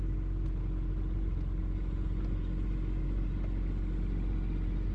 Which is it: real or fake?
real